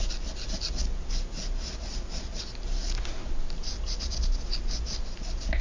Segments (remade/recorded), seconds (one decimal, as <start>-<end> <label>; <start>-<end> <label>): 0.0-5.6 recorded